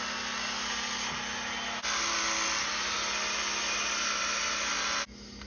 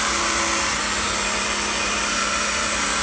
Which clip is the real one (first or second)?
first